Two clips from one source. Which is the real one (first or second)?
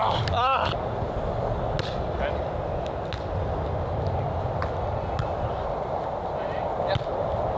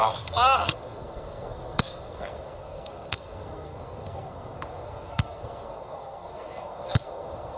first